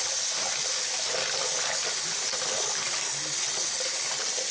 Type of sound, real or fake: real